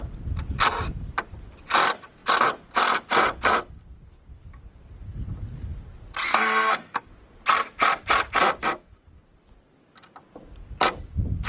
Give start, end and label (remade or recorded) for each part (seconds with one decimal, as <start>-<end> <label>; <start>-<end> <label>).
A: 0.0-6.3 recorded; 6.3-7.1 remade; 7.1-11.5 recorded